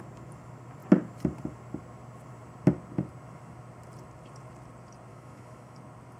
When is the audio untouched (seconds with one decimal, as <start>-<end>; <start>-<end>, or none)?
0.0-5.1; 5.8-6.2